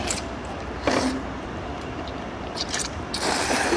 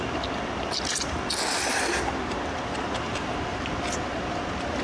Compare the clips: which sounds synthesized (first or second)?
first